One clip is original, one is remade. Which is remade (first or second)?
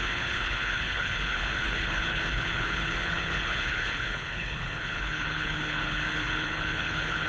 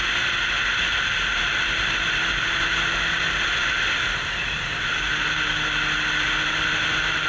first